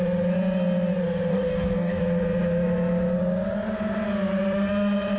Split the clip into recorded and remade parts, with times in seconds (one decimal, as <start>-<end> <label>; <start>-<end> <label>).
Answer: 0.0-1.3 recorded; 1.3-2.0 remade; 2.0-5.2 recorded